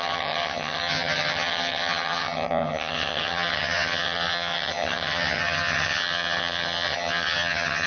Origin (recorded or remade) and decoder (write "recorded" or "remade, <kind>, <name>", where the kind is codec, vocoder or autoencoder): remade, vocoder, HiFi-GAN